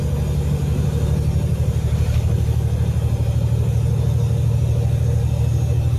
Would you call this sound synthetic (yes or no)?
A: no